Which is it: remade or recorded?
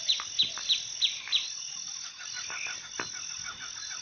recorded